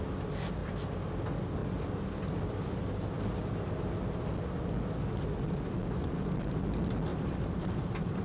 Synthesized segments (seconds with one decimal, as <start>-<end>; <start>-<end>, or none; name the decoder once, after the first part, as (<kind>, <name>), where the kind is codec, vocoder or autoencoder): 0.6-1.2 (vocoder, BigVGAN v2); 7.1-8.2